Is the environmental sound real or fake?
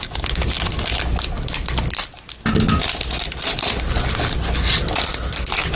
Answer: real